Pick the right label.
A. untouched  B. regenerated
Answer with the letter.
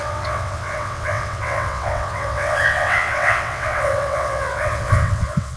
B